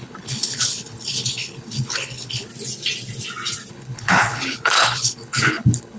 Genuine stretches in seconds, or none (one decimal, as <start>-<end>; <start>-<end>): 2.5-3.7

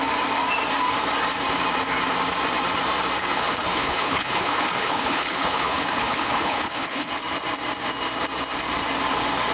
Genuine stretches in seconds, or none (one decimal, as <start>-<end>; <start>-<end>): 0.0-3.3; 7.1-9.5

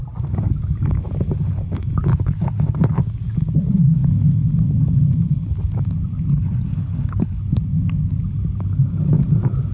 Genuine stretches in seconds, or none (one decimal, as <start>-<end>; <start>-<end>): 0.0-2.1; 3.0-6.3; 7.4-9.7

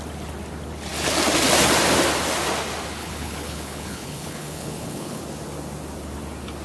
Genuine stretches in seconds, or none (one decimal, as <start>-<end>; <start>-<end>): 0.0-3.0; 5.2-6.6

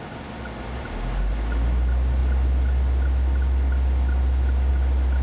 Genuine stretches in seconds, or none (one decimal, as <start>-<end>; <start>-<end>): 0.0-5.2

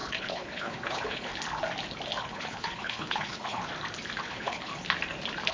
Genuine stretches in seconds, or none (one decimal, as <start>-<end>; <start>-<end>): 1.3-2.2; 3.6-4.2; 4.7-5.5